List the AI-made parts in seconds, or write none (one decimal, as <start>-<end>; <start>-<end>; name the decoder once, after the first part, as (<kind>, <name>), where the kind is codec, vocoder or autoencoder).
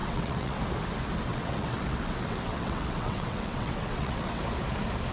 0.0-0.6 (vocoder, WaveNeXt); 1.3-4.4